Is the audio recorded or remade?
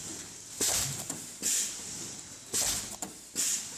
recorded